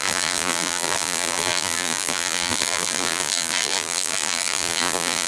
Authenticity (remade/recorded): remade